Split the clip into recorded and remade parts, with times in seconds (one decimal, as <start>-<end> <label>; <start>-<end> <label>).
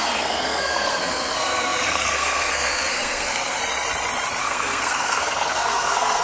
0.0-3.6 remade; 3.6-4.4 recorded; 4.4-6.2 remade